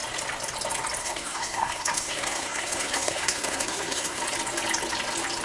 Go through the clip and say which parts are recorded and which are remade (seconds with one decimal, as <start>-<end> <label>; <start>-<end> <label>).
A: 0.0-1.0 recorded; 1.0-4.2 remade; 4.2-5.4 recorded